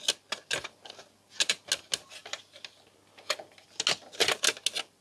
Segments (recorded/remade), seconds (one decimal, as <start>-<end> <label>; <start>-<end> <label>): 0.0-5.0 recorded